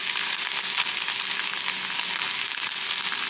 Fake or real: real